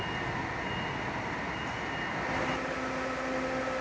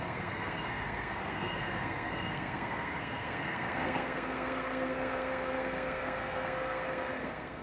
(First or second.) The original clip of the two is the first